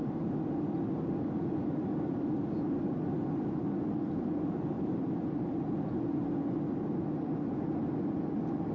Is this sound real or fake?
real